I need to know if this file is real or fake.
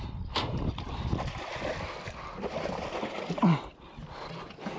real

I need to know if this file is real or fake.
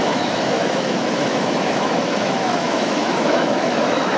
fake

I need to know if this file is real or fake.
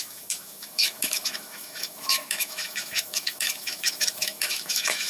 fake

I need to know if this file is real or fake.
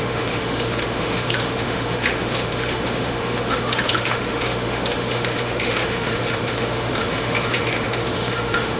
fake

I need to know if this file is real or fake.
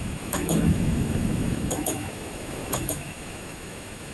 fake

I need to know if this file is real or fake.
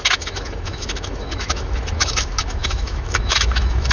fake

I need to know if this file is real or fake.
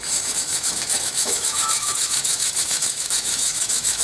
fake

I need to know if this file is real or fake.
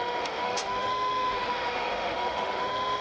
fake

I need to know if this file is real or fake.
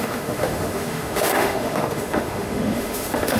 fake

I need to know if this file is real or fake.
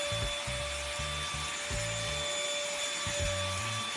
real